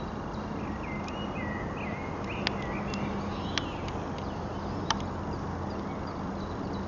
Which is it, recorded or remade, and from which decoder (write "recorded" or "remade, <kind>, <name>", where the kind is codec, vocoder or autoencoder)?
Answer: recorded